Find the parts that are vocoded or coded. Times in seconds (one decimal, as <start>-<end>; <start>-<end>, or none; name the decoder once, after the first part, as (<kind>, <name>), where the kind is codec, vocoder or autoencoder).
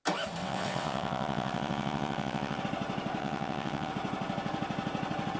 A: 0.4-2.6 (vocoder, WaveNeXt); 3.2-3.9